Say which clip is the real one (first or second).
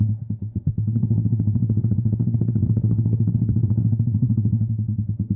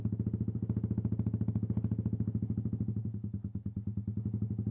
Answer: second